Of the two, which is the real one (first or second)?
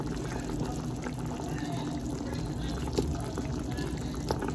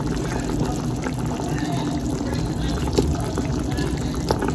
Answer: first